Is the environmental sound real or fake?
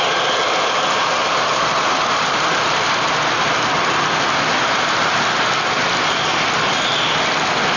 real